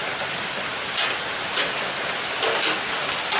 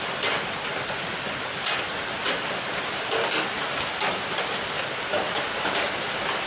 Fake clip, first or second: second